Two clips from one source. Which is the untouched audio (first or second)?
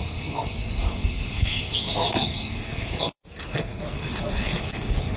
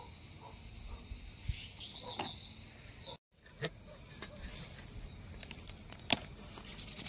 second